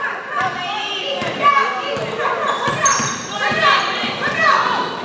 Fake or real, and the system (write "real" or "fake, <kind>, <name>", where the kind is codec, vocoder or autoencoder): real